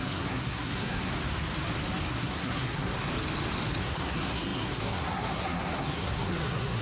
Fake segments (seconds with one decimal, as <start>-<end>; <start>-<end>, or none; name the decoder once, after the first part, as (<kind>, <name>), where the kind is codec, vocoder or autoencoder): 0.0-1.1 (codec, SNAC); 2.1-3.1; 3.8-6.8